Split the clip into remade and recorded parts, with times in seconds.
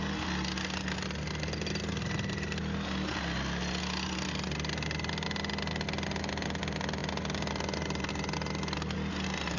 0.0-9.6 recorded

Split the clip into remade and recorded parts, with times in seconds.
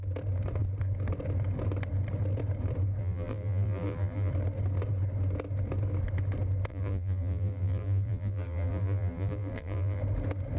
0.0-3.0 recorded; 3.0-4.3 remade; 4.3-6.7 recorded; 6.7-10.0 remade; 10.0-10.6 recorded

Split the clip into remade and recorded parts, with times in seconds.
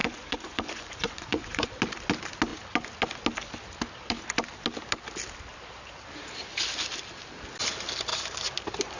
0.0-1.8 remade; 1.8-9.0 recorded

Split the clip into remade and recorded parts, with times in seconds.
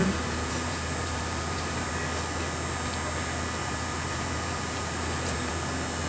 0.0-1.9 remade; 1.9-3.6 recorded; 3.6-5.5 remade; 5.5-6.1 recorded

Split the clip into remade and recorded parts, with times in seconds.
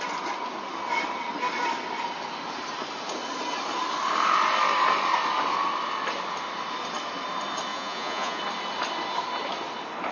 0.0-7.7 recorded; 7.7-8.4 remade; 8.4-10.1 recorded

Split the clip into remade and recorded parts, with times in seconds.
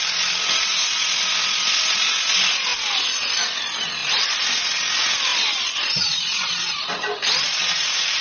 0.0-4.0 recorded; 4.0-4.5 remade; 4.5-5.3 recorded; 5.3-8.2 remade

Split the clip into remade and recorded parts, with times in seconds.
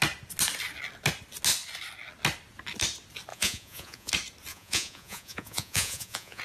0.0-3.3 recorded; 3.3-4.1 remade; 4.1-4.5 recorded; 4.5-6.4 remade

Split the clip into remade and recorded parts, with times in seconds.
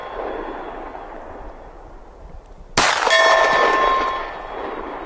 0.0-5.1 recorded